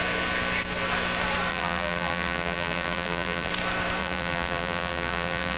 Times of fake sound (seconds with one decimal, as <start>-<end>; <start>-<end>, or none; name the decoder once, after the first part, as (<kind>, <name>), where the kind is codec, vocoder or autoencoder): 1.5-3.5 (vocoder, BigVGAN v2); 4.0-5.6